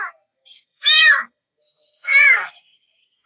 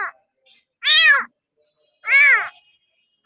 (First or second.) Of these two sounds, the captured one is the second